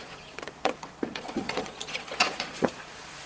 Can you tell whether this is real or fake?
fake